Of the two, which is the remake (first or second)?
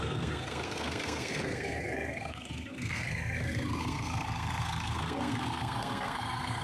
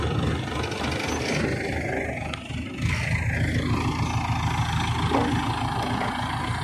first